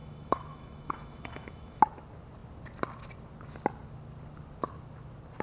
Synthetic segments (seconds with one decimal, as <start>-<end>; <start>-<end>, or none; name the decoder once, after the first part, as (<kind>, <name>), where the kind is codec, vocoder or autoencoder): 0.0-1.8 (autoencoder, DAC-VAE)